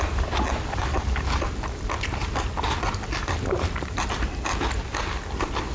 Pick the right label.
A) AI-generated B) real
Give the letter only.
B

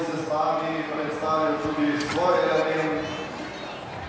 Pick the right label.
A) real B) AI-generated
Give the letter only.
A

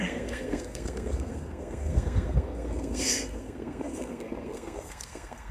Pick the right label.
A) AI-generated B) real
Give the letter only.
A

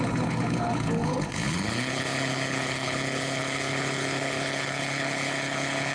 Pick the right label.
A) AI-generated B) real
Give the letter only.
A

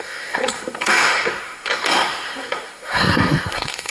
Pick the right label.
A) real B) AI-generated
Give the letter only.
B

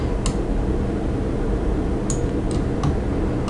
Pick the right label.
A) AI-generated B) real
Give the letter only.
B